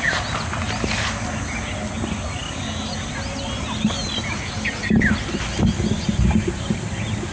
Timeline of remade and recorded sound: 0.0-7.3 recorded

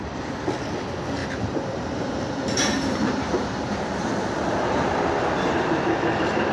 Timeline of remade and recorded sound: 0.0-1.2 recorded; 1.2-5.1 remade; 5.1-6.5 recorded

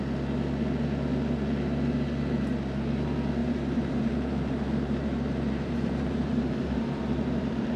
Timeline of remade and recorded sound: 0.0-3.4 recorded; 3.4-7.8 remade

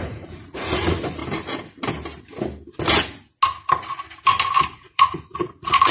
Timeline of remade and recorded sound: 0.0-1.2 remade; 1.2-4.7 recorded; 4.7-5.9 remade